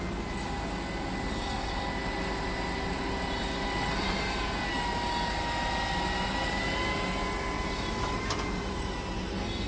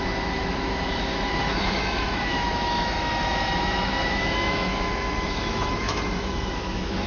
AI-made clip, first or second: second